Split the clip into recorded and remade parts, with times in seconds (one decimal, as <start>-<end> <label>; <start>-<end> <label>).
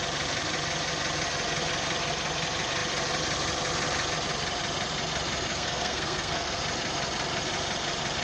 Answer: 0.0-5.5 recorded; 5.5-6.6 remade; 6.6-8.2 recorded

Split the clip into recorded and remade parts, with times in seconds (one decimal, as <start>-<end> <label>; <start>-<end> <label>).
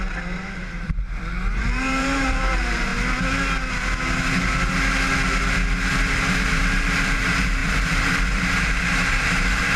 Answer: 0.0-1.0 remade; 1.0-1.6 recorded; 1.6-2.9 remade; 2.9-5.9 recorded; 5.9-9.8 remade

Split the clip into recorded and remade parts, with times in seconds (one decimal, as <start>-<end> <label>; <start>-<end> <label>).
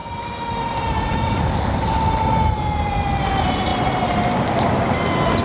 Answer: 0.0-5.4 recorded